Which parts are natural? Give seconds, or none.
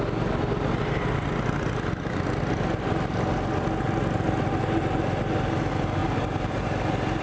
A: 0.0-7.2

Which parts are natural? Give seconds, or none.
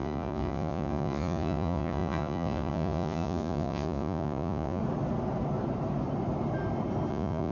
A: 4.8-7.1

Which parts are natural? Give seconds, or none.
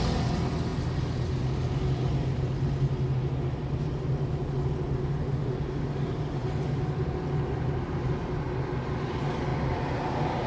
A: 0.0-10.5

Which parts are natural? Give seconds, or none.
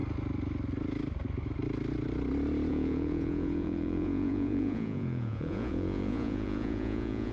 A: 0.0-2.7